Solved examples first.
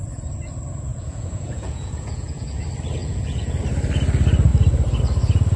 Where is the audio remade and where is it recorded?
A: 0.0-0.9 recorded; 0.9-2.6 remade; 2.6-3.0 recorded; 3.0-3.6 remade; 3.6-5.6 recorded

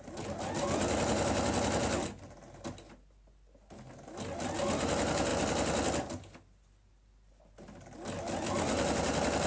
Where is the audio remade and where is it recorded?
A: 0.0-9.5 recorded